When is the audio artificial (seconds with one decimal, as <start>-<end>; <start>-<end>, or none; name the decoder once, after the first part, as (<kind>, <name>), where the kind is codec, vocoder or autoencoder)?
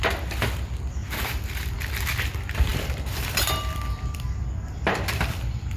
1.0-2.1 (vocoder, BigVGAN v2); 2.7-5.8